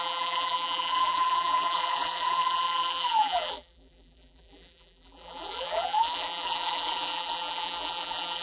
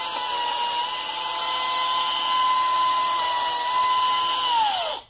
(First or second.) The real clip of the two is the second